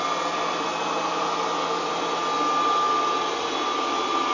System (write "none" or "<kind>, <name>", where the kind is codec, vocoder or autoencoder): none